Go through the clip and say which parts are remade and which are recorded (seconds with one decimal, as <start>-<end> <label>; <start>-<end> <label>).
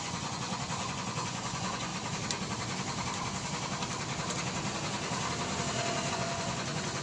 0.0-1.9 remade; 1.9-6.1 recorded; 6.1-7.0 remade